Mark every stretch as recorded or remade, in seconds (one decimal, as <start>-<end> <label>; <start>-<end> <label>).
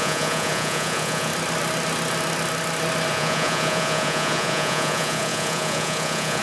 0.0-1.3 remade; 1.3-3.1 recorded; 3.1-6.4 remade